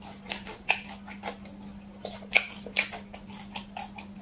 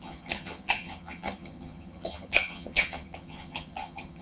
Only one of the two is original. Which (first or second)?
first